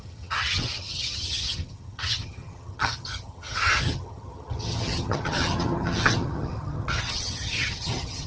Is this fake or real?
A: fake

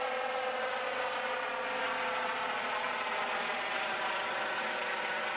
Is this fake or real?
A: real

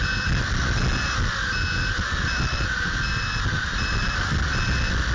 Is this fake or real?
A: real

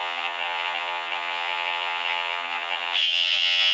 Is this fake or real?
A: fake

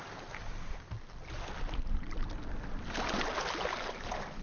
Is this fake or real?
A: real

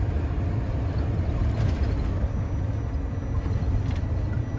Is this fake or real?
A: real